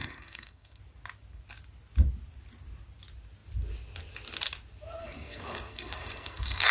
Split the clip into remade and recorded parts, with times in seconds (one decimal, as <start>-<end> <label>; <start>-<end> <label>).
0.0-0.8 remade; 0.8-5.0 recorded; 5.0-6.7 remade